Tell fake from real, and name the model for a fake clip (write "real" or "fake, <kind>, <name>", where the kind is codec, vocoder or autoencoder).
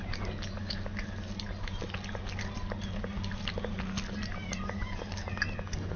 real